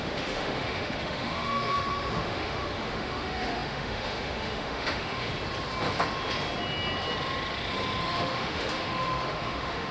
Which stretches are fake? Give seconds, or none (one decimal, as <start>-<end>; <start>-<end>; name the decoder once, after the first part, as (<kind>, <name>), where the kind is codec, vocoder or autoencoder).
0.0-5.3 (autoencoder, DAC-VAE); 8.0-9.9